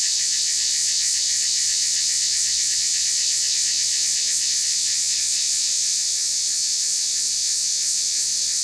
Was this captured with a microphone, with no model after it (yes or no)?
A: no